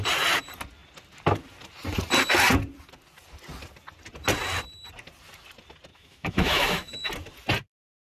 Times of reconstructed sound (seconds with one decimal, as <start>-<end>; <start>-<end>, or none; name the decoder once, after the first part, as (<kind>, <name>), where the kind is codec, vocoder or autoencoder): 5.9-7.1 (autoencoder, DAC-VAE)